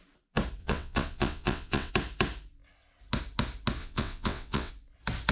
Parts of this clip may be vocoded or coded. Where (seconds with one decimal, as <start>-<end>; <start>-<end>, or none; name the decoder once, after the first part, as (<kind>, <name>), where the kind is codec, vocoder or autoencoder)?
0.6-1.9 (vocoder, WaveNeXt); 3.8-4.7